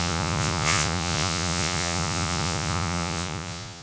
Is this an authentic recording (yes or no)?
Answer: no